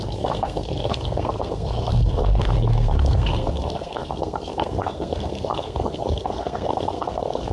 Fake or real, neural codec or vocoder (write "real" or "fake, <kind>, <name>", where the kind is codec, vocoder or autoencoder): fake, codec, SNAC